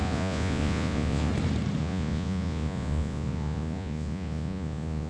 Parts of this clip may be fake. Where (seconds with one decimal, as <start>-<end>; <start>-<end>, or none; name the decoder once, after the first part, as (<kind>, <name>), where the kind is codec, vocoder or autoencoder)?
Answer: 0.0-1.3 (vocoder, Vocos); 1.8-5.1